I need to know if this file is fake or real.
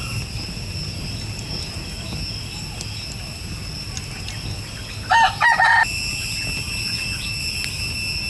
real